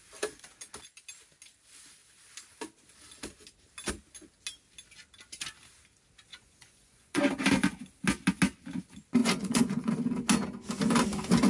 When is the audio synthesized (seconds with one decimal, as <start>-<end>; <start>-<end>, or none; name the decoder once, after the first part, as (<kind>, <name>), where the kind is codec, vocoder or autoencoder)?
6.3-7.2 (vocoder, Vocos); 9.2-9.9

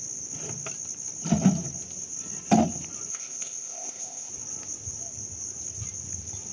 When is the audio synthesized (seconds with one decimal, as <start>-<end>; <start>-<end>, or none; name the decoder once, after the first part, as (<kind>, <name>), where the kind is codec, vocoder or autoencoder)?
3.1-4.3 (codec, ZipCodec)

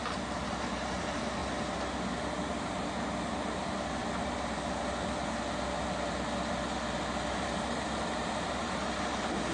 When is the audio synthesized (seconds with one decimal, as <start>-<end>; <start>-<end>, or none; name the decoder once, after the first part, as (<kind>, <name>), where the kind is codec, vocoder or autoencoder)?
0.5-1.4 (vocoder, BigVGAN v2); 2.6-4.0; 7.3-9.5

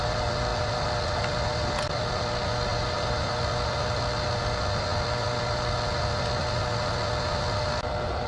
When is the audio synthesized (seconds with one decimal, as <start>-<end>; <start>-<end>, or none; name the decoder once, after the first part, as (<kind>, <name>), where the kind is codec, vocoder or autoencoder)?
2.7-3.4 (vocoder, BigVGAN v2)

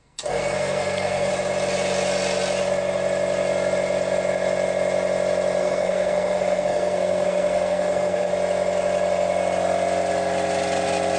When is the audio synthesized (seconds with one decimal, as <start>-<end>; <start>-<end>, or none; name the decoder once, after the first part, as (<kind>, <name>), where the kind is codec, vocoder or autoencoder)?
0.0-1.3 (codec, SNAC); 5.6-8.3

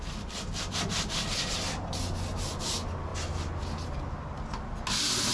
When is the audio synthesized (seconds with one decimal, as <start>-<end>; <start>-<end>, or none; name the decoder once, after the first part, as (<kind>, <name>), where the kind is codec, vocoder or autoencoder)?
none

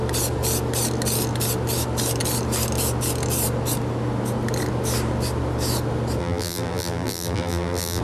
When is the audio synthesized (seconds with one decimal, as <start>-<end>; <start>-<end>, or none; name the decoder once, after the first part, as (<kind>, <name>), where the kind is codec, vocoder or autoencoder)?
6.2-8.0 (vocoder, BigVGAN v2)

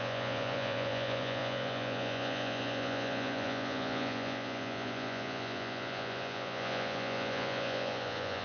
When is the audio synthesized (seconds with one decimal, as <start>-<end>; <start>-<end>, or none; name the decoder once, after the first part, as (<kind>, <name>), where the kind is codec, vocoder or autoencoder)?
0.0-8.4 (vocoder, Vocos)